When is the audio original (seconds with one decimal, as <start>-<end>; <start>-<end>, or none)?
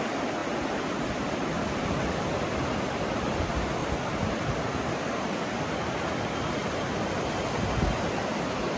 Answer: 0.0-3.8; 5.0-8.8